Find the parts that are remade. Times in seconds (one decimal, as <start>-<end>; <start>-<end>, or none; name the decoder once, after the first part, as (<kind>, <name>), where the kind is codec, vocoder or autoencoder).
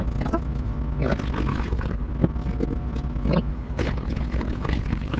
1.5-2.1 (codec, HILCodec); 3.5-5.2